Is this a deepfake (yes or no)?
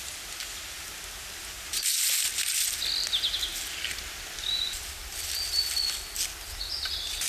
no